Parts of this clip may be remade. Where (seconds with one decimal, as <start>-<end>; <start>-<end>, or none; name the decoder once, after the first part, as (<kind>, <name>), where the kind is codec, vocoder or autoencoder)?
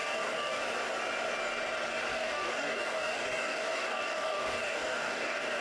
0.0-0.6 (codec, DAC); 2.1-5.6